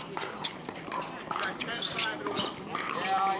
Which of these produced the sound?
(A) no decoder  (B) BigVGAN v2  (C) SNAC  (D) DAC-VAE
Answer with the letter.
A